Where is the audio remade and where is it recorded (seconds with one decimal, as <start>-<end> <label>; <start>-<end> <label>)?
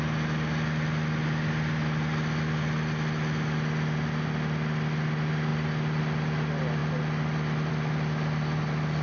0.0-9.0 recorded